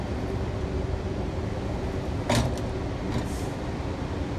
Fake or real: real